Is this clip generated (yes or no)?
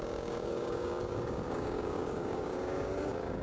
yes